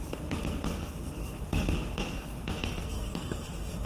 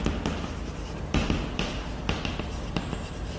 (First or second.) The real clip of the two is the second